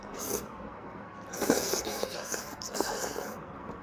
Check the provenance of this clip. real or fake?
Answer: fake